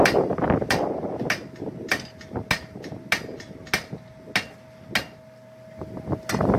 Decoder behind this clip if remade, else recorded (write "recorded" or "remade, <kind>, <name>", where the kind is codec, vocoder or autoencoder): recorded